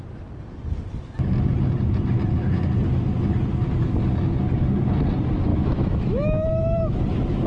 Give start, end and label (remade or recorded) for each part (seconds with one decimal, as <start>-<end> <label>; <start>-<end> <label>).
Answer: 0.0-5.5 recorded; 5.5-7.0 remade; 7.0-7.5 recorded